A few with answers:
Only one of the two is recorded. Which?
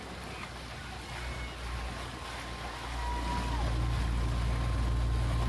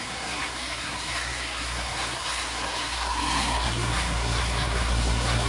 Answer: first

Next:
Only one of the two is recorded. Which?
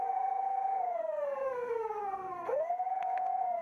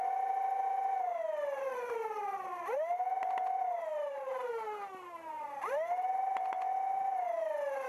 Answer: second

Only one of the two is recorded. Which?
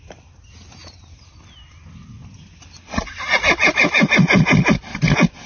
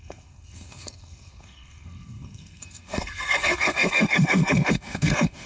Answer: first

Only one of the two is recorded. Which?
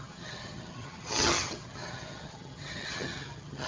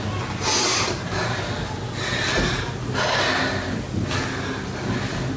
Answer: second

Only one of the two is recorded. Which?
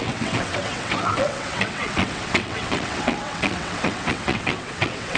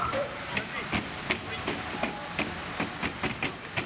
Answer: second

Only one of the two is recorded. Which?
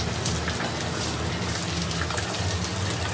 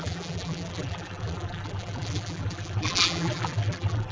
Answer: first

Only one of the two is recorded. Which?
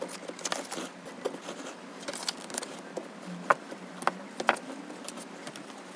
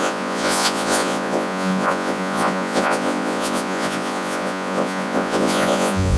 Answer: first